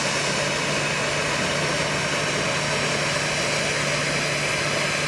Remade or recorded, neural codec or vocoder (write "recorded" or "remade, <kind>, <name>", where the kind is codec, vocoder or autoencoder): recorded